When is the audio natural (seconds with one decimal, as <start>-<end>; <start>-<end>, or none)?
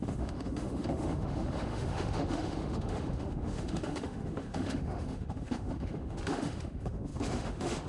none